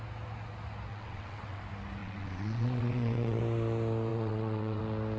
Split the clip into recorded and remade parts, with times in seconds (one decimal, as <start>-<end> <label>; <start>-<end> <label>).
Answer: 0.0-0.9 recorded; 0.9-1.6 remade; 1.6-2.0 recorded; 2.0-3.4 remade; 3.4-4.1 recorded; 4.1-4.8 remade; 4.8-5.2 recorded